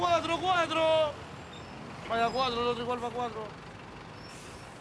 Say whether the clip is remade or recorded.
recorded